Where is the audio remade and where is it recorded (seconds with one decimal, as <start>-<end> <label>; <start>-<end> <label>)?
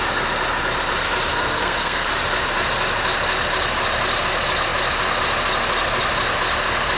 0.0-1.3 recorded; 1.3-2.1 remade; 2.1-7.0 recorded